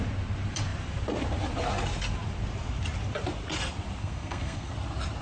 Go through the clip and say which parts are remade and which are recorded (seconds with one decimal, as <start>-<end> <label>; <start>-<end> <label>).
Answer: 0.0-4.0 recorded; 4.0-4.7 remade; 4.7-5.2 recorded